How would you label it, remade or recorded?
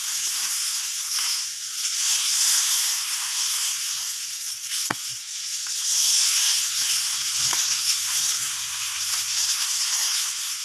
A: remade